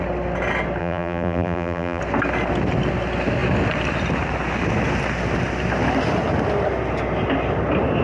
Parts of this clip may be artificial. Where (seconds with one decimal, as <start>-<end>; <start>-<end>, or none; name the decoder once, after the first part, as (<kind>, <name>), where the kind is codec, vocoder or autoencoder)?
0.8-2.0 (vocoder, BigVGAN v2)